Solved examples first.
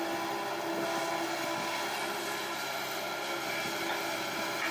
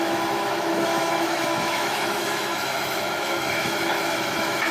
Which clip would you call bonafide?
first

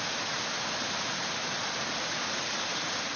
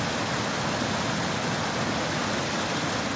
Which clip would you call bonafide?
second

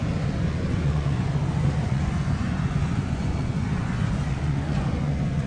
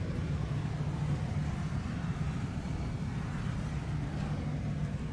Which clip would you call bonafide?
second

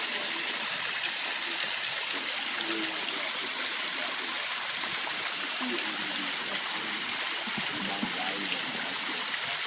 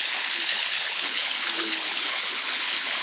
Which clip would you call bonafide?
first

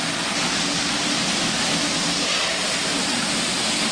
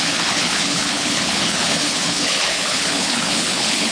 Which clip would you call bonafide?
first